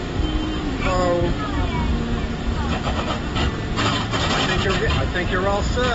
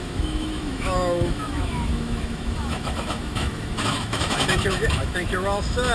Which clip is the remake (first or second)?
second